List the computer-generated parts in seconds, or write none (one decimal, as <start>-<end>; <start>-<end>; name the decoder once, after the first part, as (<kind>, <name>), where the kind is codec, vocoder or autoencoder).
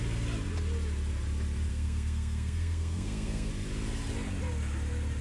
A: 1.7-3.5 (codec, SNAC)